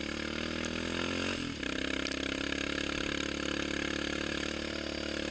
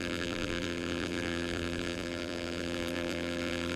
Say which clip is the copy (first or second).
second